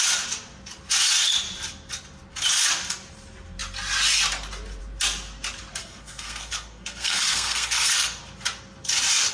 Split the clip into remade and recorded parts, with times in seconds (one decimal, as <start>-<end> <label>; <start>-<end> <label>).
0.0-5.8 recorded; 5.8-8.2 remade; 8.2-9.3 recorded